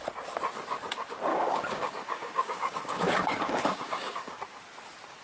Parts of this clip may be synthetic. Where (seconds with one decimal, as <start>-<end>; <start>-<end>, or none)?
1.3-4.4